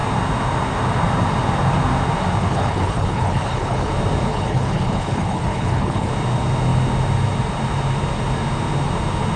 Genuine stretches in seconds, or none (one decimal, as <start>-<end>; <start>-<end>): 0.0-2.4; 3.9-4.3; 6.1-9.4